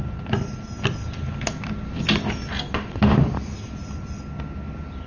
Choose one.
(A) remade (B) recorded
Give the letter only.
B